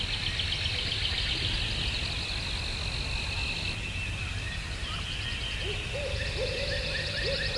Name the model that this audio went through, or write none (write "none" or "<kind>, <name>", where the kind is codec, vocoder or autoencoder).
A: none